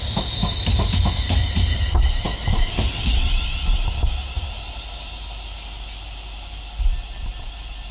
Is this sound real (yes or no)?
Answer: yes